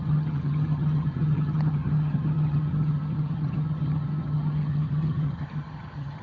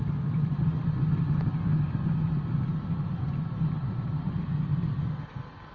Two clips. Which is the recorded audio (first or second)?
second